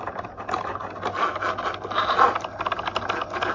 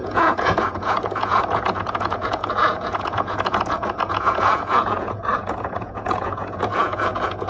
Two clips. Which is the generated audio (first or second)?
second